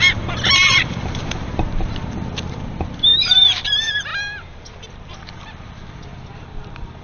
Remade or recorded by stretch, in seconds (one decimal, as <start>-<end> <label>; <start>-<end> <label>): 0.0-7.0 remade